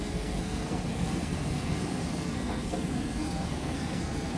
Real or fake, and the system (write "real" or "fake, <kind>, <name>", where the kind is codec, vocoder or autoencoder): fake, codec, SNAC